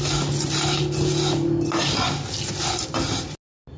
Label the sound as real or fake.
real